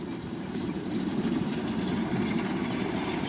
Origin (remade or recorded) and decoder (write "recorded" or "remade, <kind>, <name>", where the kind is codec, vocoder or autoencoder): remade, vocoder, BigVGAN v2